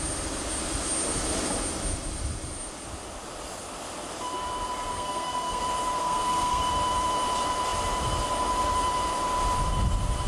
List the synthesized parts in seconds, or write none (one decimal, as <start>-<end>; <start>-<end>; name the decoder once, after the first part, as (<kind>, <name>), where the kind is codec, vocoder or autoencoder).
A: 4.9-5.6 (codec, SNAC); 6.0-6.7